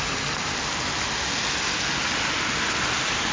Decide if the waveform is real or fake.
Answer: real